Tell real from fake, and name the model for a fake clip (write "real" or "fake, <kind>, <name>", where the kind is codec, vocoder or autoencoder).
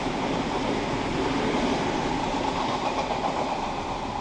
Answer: real